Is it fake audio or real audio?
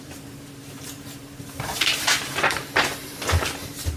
fake